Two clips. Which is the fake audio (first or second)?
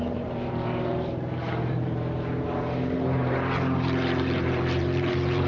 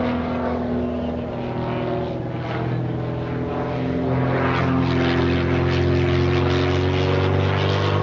first